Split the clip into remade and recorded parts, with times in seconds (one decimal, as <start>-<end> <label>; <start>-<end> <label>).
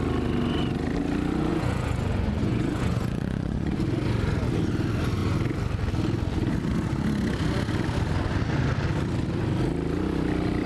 0.0-1.5 recorded; 1.5-3.8 remade; 3.8-10.7 recorded